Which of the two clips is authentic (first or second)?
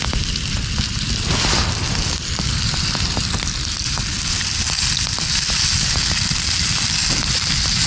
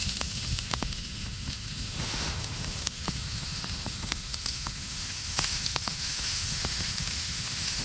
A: first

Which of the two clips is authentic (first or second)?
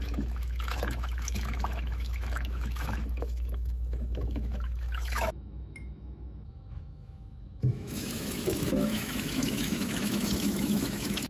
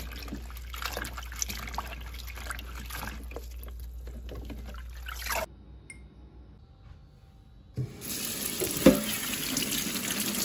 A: second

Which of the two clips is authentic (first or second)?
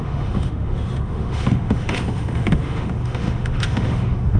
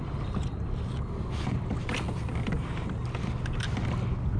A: second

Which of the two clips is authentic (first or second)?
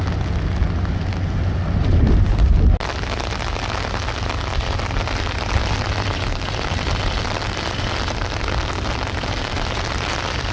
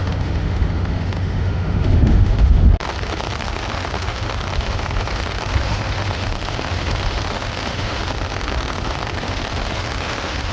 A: first